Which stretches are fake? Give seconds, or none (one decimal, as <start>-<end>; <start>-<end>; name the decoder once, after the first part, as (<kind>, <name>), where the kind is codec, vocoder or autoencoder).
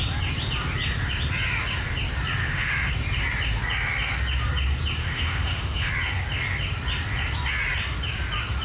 2.4-2.9 (autoencoder, DAC-VAE); 5.0-5.9